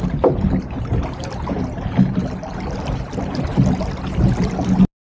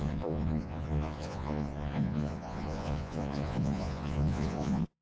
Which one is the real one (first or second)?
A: first